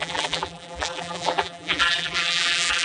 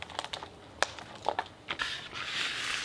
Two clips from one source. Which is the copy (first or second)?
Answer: first